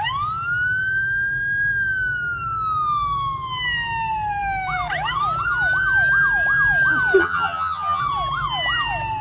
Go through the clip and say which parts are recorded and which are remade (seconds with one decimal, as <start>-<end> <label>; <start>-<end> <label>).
0.0-7.2 recorded; 7.2-8.0 remade; 8.0-9.2 recorded